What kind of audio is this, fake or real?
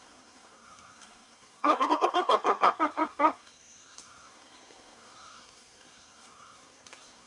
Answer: fake